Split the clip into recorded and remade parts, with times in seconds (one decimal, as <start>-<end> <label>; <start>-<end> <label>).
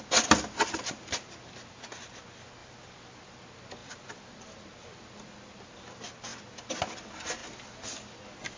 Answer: 0.0-2.6 recorded; 2.6-3.4 remade; 3.4-3.8 recorded; 3.8-5.7 remade; 5.7-8.6 recorded